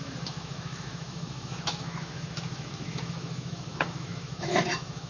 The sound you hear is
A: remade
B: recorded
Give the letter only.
A